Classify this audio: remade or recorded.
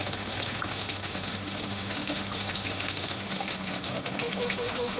remade